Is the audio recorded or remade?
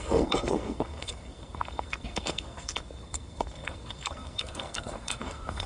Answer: remade